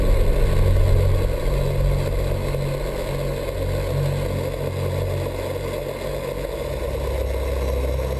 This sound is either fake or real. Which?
real